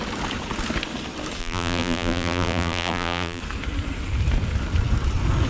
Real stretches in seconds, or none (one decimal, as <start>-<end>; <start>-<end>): 0.0-1.4; 3.4-5.5